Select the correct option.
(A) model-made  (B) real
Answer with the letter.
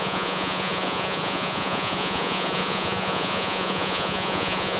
A